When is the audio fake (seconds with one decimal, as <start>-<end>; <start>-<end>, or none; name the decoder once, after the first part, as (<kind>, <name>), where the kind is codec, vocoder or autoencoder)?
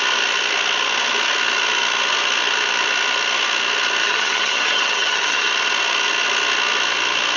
4.0-5.5 (vocoder, HiFi-GAN)